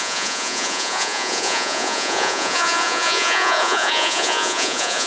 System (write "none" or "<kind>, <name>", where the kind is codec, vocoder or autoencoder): vocoder, Vocos